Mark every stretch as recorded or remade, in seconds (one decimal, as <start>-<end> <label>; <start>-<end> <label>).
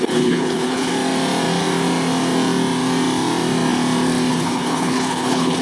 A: 0.0-0.9 remade; 0.9-4.3 recorded; 4.3-5.6 remade